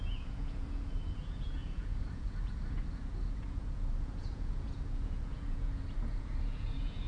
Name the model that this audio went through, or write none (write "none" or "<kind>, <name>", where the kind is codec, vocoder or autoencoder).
vocoder, Vocos